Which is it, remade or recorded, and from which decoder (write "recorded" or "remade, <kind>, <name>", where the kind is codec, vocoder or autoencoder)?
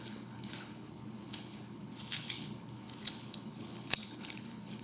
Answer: remade, codec, HILCodec